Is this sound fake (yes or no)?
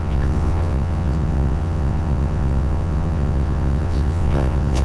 yes